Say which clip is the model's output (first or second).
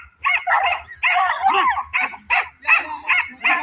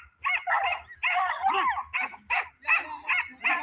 first